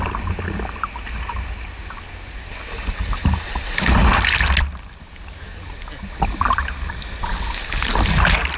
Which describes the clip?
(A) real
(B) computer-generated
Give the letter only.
A